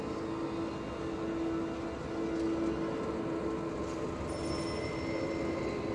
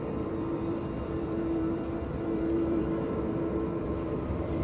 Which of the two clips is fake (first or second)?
second